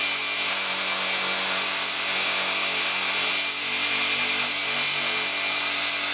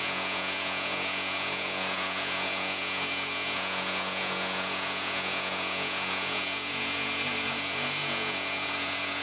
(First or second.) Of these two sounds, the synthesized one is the second